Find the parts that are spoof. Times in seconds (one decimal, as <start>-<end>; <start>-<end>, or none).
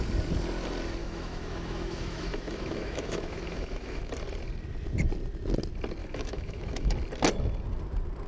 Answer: 1.0-4.1; 6.0-6.9